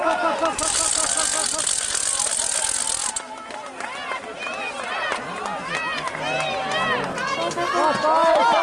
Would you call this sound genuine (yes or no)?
yes